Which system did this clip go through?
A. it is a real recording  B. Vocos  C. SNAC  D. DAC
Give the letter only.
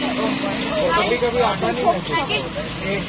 A